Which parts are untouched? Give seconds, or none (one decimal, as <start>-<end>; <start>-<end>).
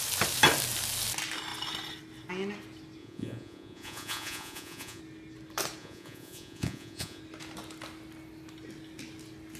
0.0-3.0; 5.0-5.8; 7.2-9.6